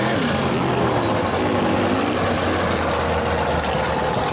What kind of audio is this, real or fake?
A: real